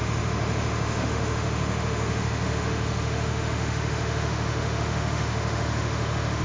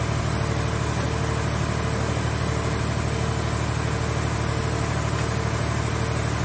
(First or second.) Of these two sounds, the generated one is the first